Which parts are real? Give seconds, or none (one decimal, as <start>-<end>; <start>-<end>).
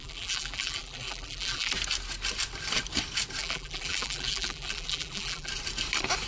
1.7-3.4; 5.5-6.3